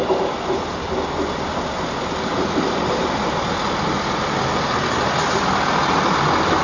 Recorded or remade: recorded